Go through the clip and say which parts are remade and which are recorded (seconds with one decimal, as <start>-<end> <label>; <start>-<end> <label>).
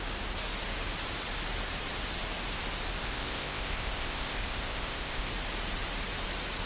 0.0-3.0 recorded; 3.0-5.3 remade; 5.3-6.7 recorded